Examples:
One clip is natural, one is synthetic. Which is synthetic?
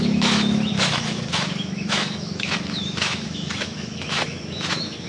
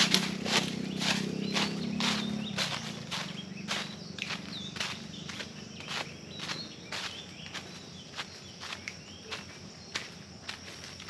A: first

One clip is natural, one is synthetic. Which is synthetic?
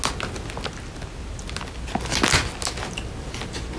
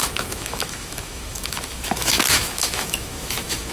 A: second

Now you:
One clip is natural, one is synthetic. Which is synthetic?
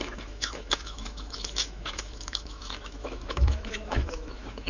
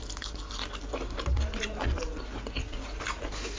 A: first